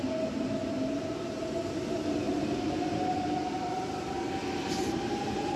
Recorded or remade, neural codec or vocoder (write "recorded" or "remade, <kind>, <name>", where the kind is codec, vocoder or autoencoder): recorded